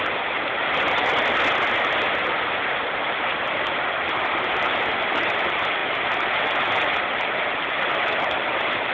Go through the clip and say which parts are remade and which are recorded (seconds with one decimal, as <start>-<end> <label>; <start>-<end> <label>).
0.0-8.9 recorded